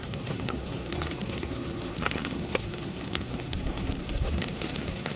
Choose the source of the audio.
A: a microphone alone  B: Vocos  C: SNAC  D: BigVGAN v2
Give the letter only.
C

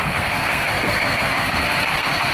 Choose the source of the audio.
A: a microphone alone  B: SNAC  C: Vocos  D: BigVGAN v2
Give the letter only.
B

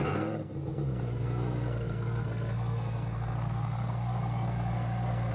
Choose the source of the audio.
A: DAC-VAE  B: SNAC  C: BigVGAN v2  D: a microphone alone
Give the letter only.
B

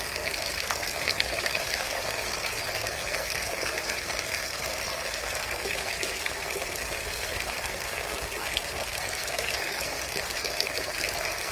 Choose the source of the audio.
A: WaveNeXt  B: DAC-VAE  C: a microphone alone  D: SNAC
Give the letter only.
D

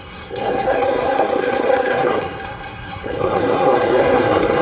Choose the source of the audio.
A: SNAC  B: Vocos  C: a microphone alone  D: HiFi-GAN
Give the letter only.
A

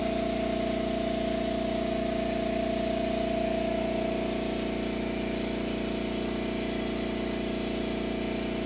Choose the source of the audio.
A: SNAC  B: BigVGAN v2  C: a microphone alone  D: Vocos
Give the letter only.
C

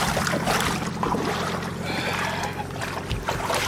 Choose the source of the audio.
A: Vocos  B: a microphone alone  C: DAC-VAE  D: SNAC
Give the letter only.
B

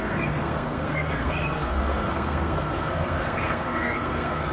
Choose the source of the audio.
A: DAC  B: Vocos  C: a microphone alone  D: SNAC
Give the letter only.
D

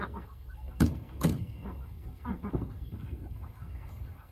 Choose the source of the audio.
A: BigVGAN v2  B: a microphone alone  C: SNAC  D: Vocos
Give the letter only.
C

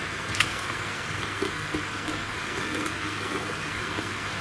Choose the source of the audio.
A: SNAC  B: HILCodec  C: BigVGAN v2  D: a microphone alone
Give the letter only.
A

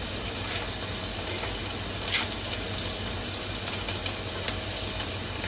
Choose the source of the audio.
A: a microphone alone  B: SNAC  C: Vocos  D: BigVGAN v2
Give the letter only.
A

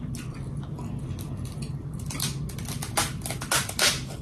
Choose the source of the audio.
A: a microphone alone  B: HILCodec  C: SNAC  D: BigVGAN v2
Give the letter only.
A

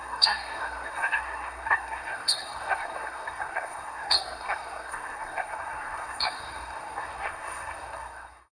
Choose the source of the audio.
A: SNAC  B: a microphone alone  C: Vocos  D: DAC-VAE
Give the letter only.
A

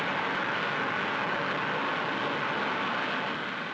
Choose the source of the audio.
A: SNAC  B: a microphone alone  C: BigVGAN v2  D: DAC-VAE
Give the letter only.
B